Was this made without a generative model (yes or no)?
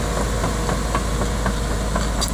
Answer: yes